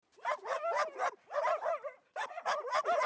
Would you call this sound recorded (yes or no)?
no